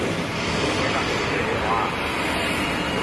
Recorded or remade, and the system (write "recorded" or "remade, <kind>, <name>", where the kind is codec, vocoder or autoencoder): recorded